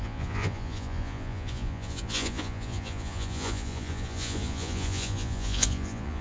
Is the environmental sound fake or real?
fake